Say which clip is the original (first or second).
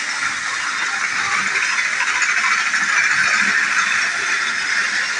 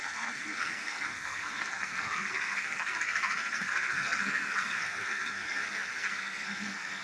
first